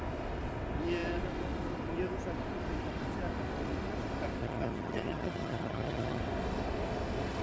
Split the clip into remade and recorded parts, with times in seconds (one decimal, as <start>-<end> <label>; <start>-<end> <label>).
0.0-4.4 recorded; 4.4-6.2 remade; 6.2-7.4 recorded